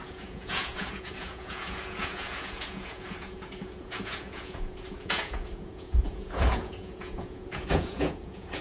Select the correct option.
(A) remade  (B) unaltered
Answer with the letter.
A